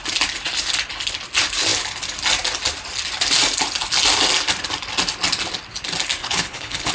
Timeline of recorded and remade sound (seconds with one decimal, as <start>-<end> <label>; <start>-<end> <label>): 0.0-6.2 recorded; 6.2-6.9 remade